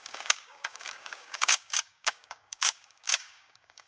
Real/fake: fake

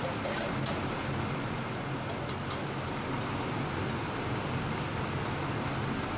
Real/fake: real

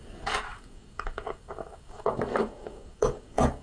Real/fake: fake